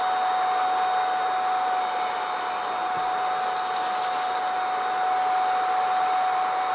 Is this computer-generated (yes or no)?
no